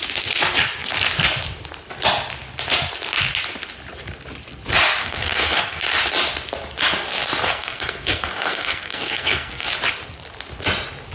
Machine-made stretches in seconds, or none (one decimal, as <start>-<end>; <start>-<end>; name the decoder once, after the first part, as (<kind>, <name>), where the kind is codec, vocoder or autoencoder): 5.0-5.8 (codec, SNAC); 7.4-9.7